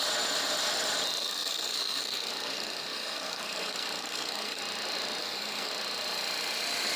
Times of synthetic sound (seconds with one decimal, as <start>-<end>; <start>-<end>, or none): 1.2-4.6; 5.2-5.7